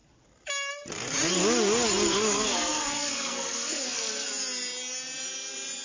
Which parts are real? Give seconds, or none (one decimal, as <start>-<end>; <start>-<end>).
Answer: 0.0-2.1; 4.3-5.8